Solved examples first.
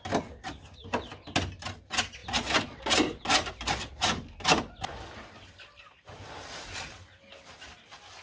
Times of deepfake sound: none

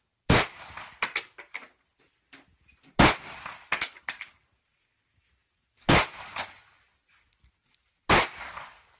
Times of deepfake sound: none

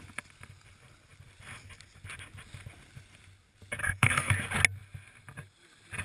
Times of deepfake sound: 3.8-4.3 (codec, SNAC)